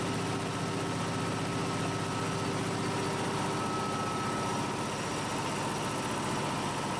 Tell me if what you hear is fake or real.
real